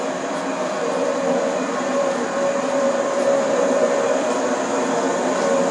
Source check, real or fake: fake